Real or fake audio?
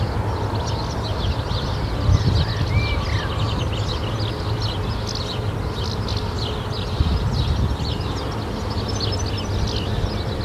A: real